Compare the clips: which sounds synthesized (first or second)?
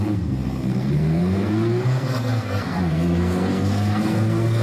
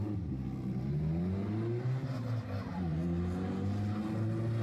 first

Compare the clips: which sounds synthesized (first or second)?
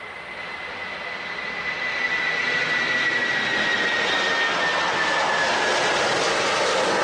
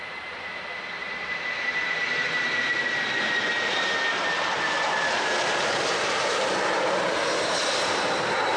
second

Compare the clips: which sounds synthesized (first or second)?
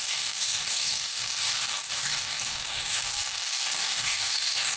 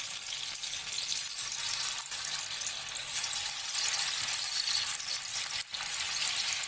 first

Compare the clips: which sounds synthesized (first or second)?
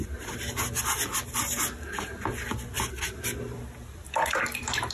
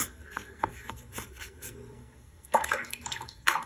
second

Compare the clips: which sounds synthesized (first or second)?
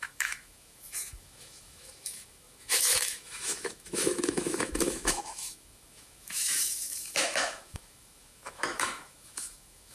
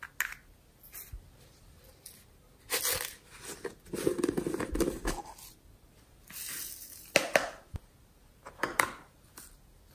first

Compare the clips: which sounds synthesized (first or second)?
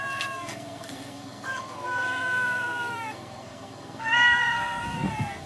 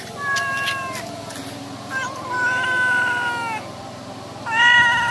first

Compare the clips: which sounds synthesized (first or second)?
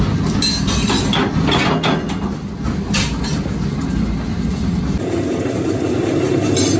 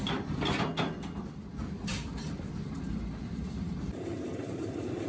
second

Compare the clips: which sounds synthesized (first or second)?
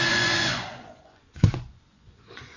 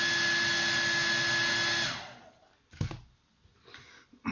first